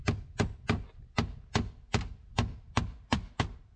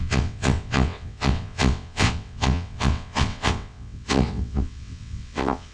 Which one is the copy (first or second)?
second